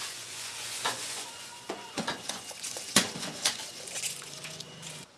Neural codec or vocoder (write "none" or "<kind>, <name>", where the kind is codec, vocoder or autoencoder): vocoder, Vocos